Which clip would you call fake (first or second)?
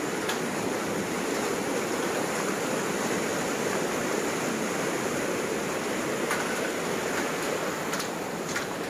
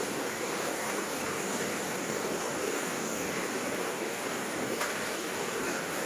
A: second